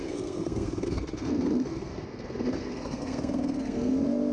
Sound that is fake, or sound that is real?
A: fake